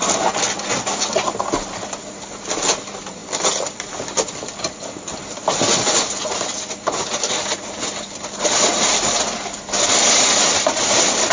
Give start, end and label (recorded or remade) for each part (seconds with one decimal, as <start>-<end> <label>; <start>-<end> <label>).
0.0-11.3 recorded